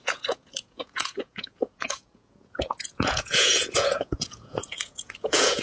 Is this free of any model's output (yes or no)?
no